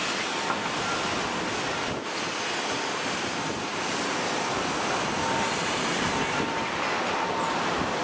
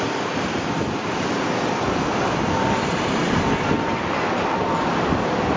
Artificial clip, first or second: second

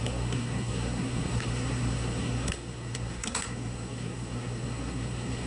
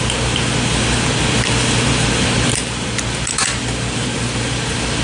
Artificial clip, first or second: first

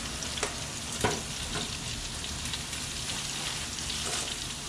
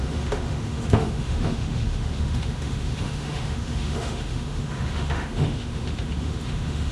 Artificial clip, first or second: second